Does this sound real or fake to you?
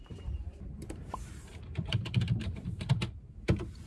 fake